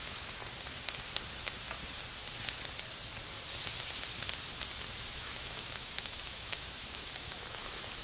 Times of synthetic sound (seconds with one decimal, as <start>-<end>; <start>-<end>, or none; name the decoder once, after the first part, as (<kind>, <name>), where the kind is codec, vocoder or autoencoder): 0.0-0.4 (autoencoder, DAC-VAE); 1.4-1.8; 5.1-8.0